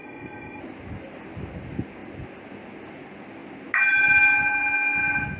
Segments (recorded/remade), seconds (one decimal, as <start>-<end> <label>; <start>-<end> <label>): 0.0-0.6 remade; 0.6-5.4 recorded